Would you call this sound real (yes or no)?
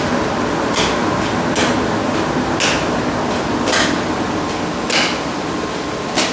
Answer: yes